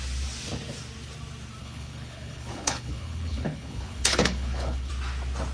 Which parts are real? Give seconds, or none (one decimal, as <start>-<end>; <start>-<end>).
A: 0.0-1.6; 4.9-5.5